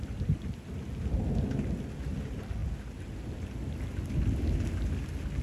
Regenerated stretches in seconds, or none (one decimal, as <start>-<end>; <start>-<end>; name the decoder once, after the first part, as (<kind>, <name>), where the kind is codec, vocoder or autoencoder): none